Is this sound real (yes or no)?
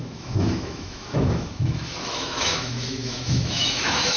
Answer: no